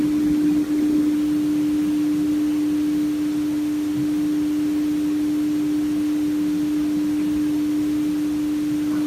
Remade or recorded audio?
recorded